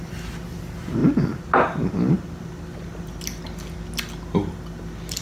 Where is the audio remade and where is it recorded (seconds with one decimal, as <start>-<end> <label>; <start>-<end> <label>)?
0.0-5.2 recorded

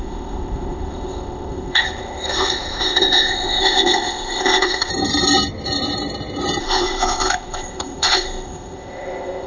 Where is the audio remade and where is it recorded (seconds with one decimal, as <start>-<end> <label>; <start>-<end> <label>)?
0.0-4.9 remade; 4.9-6.6 recorded; 6.6-9.5 remade

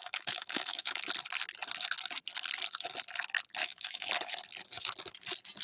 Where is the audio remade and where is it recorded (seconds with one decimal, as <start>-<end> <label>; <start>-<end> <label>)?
0.0-1.1 remade; 1.1-3.6 recorded; 3.6-4.1 remade; 4.1-5.6 recorded

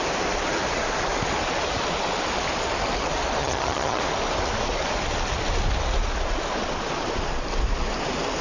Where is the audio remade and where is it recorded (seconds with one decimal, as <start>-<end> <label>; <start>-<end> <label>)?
0.0-3.4 recorded; 3.4-4.0 remade; 4.0-8.4 recorded

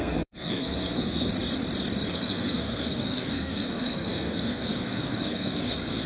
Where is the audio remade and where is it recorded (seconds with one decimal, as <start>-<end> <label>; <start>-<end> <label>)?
0.0-1.3 remade; 1.3-2.1 recorded; 2.1-6.1 remade

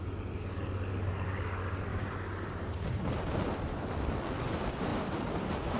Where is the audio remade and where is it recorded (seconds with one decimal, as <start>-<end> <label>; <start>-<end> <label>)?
0.0-1.9 recorded; 1.9-3.3 remade; 3.3-4.9 recorded; 4.9-5.8 remade

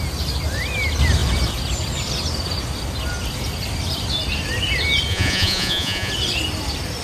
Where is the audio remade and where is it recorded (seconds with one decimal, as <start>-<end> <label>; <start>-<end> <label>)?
0.0-5.1 recorded; 5.1-6.1 remade; 6.1-7.0 recorded